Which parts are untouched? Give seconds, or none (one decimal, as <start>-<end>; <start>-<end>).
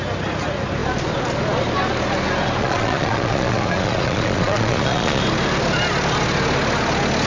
0.0-2.6; 5.2-7.3